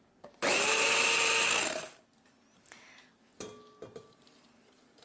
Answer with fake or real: real